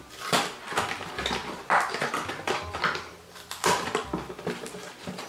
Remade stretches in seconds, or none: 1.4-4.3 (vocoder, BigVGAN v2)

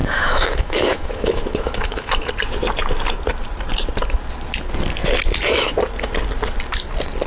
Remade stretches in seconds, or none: 0.0-2.3 (autoencoder, DAC-VAE)

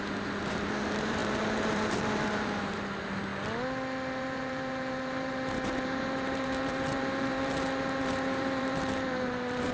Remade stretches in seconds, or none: 0.0-3.3 (vocoder, BigVGAN v2); 4.2-9.7

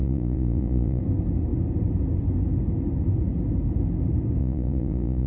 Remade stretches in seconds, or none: 0.0-1.0 (vocoder, Vocos); 4.4-5.3

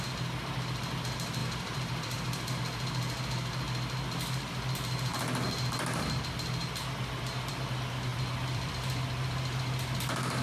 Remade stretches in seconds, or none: 1.4-2.6 (vocoder, BigVGAN v2); 8.1-8.7

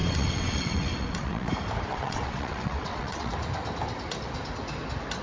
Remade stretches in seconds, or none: 0.0-1.5 (vocoder, WaveNeXt); 1.9-3.3

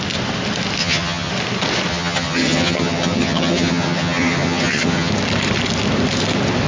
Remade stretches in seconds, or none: 0.8-1.3 (vocoder, HiFi-GAN); 1.9-5.1